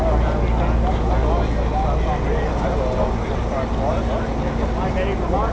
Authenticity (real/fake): real